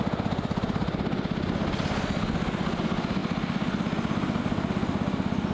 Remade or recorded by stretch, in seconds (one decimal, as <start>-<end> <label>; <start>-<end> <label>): 0.0-5.5 recorded